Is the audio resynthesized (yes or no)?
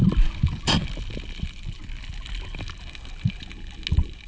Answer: no